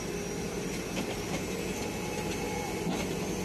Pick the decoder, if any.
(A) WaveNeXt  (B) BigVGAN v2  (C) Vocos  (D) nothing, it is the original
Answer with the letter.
D